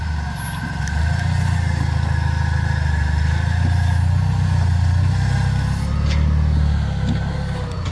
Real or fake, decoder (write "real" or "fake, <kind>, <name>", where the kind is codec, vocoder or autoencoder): real